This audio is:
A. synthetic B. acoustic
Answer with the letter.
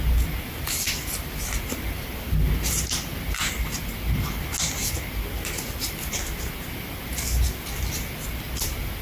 B